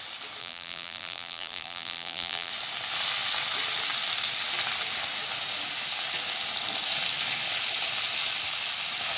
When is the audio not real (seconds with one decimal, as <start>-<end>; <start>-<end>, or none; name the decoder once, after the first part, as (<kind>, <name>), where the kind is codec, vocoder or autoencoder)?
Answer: 0.4-2.5 (vocoder, BigVGAN v2)